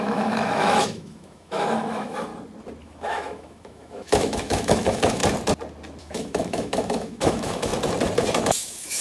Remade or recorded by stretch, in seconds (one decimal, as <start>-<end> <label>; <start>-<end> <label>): 0.0-2.3 remade; 2.3-2.8 recorded; 2.8-5.2 remade; 5.2-6.0 recorded; 6.0-7.7 remade; 7.7-8.4 recorded; 8.4-9.0 remade